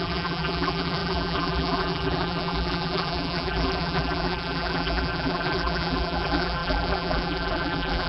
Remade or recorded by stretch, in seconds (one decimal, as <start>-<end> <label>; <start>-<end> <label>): 0.0-8.1 remade